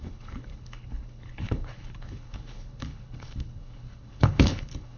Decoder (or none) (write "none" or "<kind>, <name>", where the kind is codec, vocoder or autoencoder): codec, HILCodec